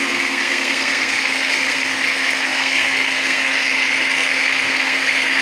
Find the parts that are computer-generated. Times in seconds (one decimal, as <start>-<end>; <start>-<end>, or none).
0.0-5.4